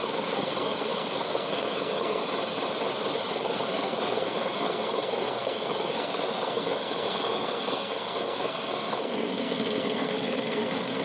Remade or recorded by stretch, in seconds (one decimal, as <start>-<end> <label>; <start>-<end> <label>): 0.0-2.2 remade; 2.2-3.3 recorded; 3.3-11.0 remade